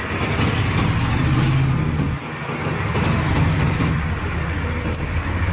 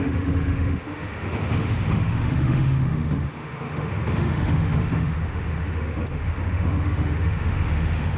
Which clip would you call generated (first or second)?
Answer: second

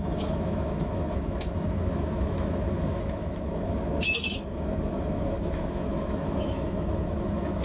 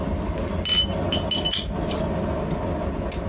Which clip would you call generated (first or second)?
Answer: first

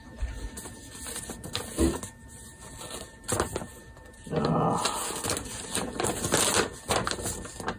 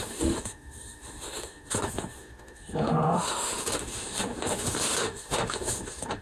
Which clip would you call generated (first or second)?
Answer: second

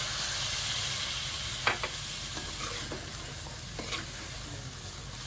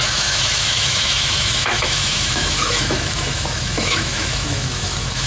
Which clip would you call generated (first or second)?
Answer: second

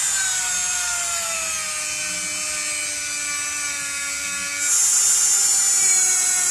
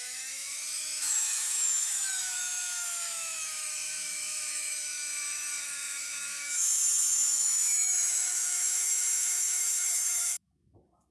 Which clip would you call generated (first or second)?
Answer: second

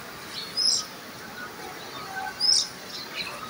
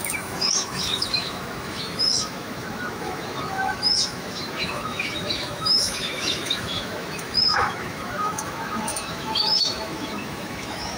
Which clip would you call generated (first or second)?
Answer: second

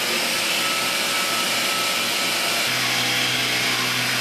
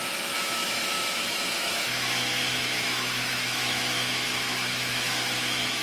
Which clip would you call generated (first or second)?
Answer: second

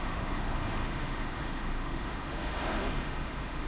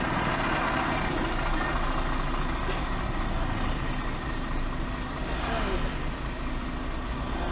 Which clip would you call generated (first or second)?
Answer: first